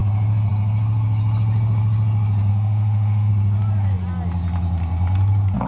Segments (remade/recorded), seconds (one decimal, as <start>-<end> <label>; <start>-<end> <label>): 0.0-2.5 recorded; 2.5-3.3 remade; 3.3-5.7 recorded